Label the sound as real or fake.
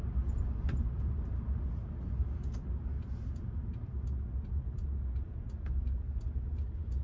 real